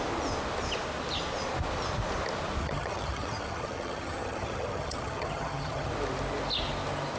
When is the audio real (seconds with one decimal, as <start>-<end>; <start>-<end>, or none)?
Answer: 0.0-2.6; 5.9-7.2